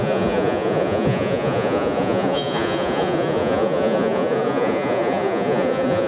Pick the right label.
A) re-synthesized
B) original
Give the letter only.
A